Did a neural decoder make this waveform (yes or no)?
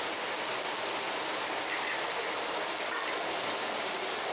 no